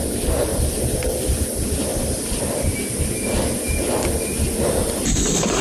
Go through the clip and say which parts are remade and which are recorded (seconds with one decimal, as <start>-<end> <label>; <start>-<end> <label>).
0.0-0.5 recorded; 0.5-1.5 remade; 1.5-1.9 recorded; 1.9-2.4 remade; 2.4-4.8 recorded; 4.8-5.6 remade